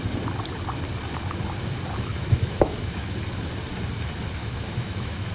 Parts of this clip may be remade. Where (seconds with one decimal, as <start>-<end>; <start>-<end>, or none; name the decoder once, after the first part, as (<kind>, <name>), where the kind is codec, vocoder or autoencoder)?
2.1-3.2 (autoencoder, DAC-VAE); 4.4-5.3